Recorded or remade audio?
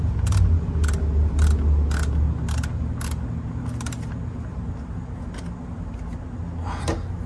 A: recorded